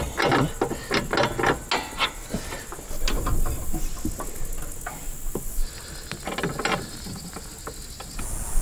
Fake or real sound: real